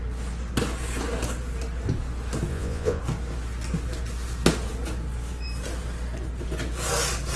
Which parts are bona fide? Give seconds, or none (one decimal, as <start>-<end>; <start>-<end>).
0.0-2.5; 3.0-7.4